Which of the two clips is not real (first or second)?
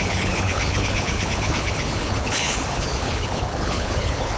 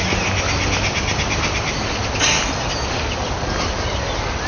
first